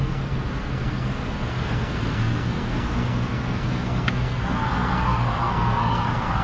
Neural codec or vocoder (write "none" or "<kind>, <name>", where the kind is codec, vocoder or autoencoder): codec, SNAC